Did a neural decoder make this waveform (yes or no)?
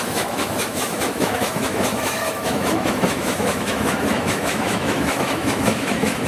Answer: yes